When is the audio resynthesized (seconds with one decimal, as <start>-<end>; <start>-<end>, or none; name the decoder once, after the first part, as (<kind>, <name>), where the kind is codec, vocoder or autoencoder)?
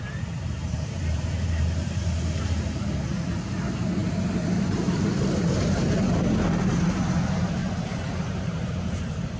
0.6-2.0 (vocoder, BigVGAN v2); 7.6-9.4